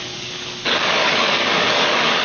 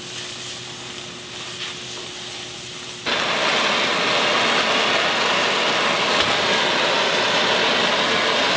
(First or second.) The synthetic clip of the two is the first